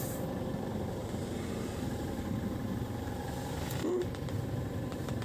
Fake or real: fake